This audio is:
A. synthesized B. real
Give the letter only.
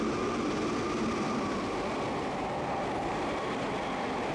B